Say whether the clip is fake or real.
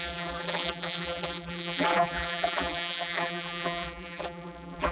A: fake